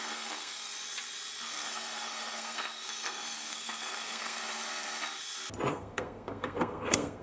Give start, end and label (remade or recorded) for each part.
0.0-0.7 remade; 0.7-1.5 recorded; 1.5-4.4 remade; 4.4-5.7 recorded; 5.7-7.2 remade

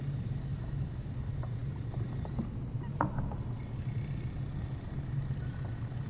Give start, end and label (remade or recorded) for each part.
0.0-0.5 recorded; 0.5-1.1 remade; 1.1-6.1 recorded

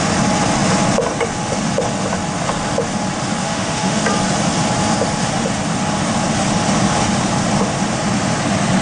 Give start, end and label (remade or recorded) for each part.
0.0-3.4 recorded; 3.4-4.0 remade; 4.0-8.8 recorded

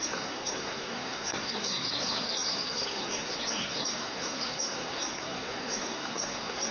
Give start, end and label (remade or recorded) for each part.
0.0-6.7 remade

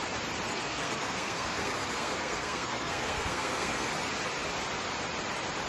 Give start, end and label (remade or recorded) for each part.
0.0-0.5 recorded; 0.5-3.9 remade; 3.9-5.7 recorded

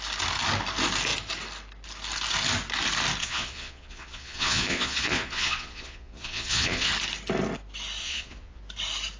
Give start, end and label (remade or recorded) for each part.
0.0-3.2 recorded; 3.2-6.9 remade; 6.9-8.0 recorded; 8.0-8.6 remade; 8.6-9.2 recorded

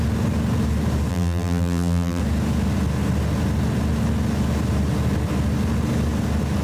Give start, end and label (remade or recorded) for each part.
0.0-1.1 recorded; 1.1-2.2 remade; 2.2-6.6 recorded